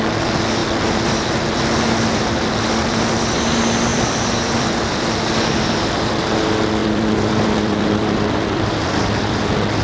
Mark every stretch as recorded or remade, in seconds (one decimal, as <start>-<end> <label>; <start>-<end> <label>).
0.0-3.9 recorded; 3.9-5.0 remade; 5.0-6.8 recorded; 6.8-9.4 remade; 9.4-9.8 recorded